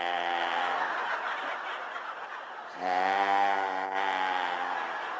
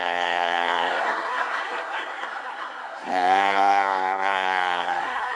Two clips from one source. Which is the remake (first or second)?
second